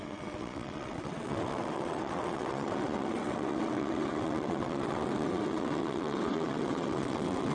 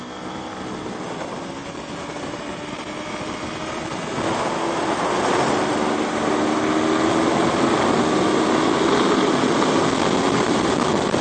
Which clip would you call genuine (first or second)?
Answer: second